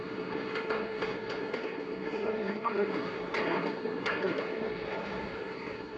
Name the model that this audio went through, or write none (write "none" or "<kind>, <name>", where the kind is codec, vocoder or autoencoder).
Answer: codec, SNAC